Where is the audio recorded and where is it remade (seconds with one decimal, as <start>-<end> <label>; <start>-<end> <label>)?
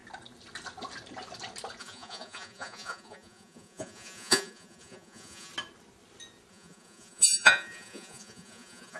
0.0-1.8 recorded; 1.8-5.5 remade; 5.5-6.5 recorded; 6.5-9.0 remade